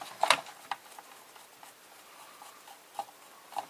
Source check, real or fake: real